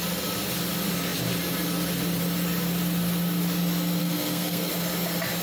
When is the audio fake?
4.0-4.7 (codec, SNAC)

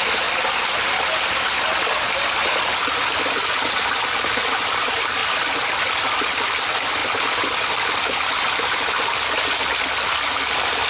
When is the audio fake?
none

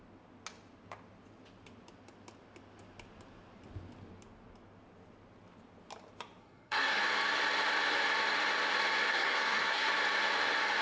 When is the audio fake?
6.4-7.0 (codec, SNAC); 9.1-9.9

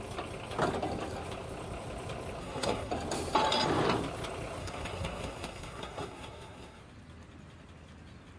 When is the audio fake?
2.4-2.9 (codec, SNAC); 4.6-6.8

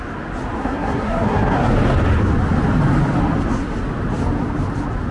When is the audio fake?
0.6-1.7 (codec, SNAC)

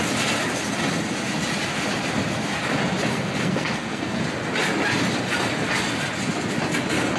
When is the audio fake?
3.1-4.2 (codec, SNAC)